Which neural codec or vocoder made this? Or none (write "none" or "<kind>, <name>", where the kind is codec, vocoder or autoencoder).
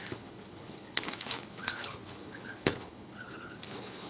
codec, HILCodec